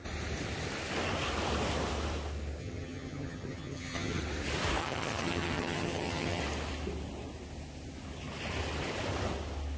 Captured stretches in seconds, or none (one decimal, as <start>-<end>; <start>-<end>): 0.0-2.6; 4.2-4.8; 6.4-9.8